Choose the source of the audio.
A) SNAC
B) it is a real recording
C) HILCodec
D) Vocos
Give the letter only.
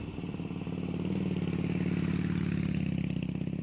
B